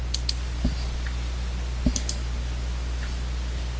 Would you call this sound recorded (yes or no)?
yes